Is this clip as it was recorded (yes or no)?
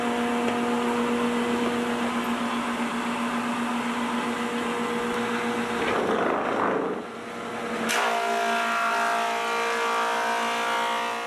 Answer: yes